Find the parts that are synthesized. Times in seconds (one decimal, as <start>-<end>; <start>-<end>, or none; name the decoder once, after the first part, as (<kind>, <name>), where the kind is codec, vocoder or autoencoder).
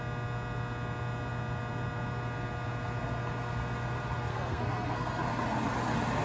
4.3-5.2 (codec, SNAC)